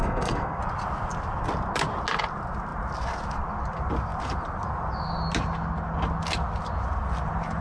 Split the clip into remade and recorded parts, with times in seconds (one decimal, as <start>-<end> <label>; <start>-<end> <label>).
0.0-0.6 remade; 0.6-7.6 recorded

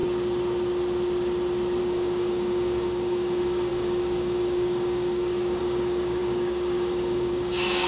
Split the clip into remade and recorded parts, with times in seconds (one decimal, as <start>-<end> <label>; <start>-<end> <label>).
0.0-1.8 recorded; 1.8-7.9 remade

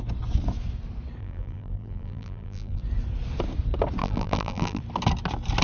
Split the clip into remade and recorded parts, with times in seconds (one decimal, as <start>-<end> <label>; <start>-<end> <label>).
0.0-1.2 recorded; 1.2-2.8 remade; 2.8-4.0 recorded; 4.0-4.8 remade; 4.8-5.6 recorded

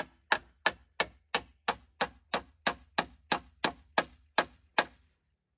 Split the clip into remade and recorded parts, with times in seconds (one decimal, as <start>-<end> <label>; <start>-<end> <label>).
0.0-5.6 recorded

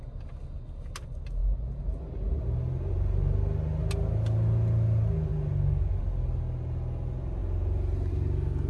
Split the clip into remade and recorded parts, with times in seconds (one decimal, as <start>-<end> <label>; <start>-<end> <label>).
0.0-8.7 recorded